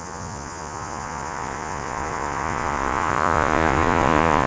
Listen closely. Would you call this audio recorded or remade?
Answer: remade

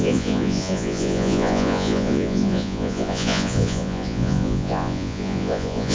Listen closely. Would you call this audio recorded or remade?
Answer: remade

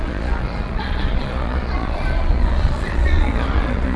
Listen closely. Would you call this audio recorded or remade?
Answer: remade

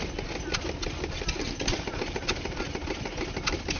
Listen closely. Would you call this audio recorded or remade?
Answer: recorded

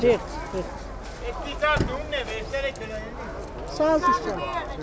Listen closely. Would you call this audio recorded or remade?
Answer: recorded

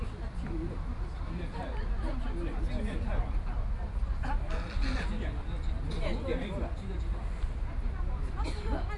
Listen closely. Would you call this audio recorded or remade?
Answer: recorded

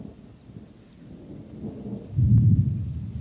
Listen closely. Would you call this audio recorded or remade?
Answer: recorded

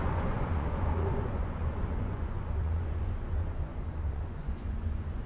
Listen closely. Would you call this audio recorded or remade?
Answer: remade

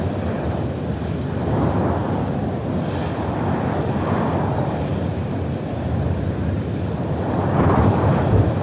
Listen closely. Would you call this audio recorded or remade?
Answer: recorded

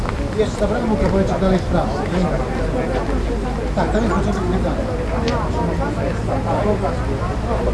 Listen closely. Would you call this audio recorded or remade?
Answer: recorded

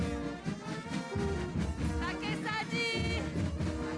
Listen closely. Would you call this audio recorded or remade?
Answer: recorded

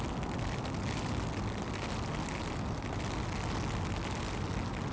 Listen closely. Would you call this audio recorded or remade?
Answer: recorded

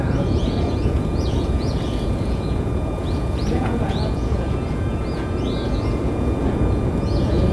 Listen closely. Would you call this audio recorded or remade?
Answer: remade